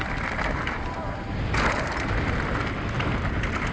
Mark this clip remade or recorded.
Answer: recorded